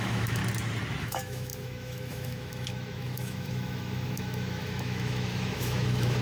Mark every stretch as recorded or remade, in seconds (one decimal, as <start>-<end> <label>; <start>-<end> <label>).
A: 0.0-0.4 remade; 0.4-1.0 recorded; 1.0-6.2 remade